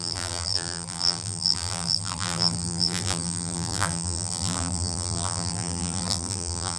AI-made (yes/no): yes